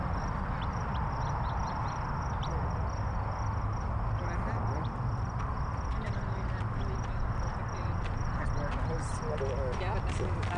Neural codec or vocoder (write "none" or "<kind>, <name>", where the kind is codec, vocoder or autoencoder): none